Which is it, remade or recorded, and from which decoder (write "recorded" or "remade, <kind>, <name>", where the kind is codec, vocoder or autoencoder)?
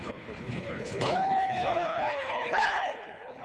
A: remade, codec, HILCodec